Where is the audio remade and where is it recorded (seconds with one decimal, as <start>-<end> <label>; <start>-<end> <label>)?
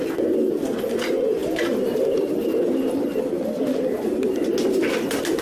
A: 0.0-5.4 recorded